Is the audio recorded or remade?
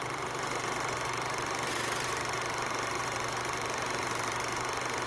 remade